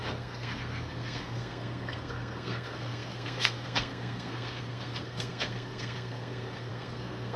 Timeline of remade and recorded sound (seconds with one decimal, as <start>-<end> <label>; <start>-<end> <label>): 0.0-7.4 remade